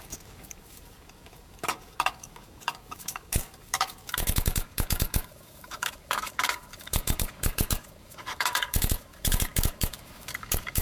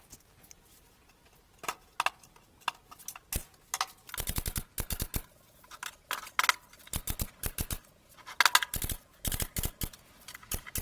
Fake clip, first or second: first